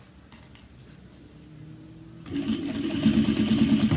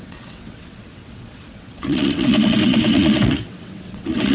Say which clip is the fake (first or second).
second